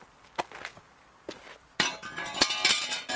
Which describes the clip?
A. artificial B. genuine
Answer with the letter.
B